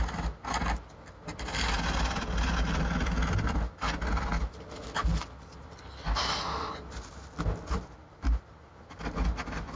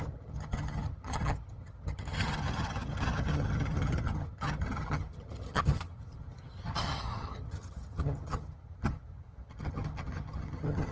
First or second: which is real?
first